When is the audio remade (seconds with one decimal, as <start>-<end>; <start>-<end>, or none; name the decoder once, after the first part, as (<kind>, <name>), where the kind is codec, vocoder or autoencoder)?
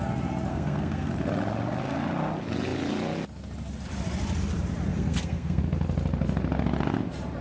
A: 0.5-1.1 (codec, SNAC); 4.9-5.6